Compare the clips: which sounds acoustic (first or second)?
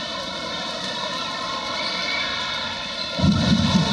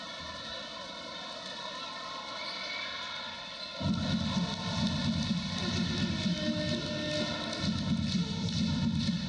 second